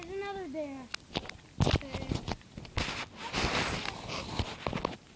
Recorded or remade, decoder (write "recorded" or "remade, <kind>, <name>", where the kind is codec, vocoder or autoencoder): recorded